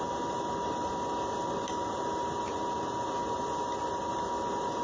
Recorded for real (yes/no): yes